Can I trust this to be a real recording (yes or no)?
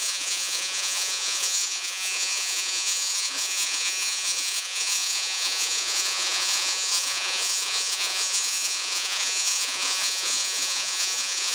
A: no